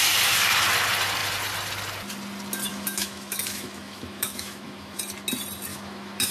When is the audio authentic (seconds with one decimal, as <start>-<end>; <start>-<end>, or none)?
0.0-2.7; 5.0-5.7